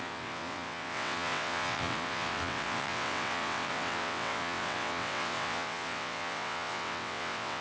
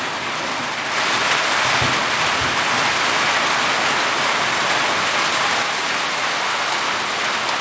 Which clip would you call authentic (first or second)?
second